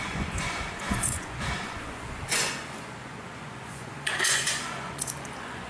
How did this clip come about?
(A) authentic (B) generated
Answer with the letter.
B